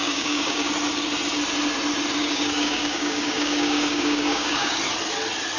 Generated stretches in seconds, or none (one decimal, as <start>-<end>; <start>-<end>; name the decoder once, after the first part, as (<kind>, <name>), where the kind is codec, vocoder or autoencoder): 0.0-0.7 (codec, DAC); 2.2-4.8

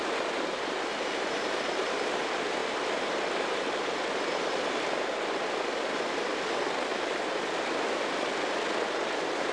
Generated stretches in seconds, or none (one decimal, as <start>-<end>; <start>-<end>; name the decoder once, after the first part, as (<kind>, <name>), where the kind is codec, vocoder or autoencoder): none